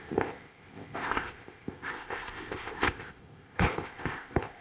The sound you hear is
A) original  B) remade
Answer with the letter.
B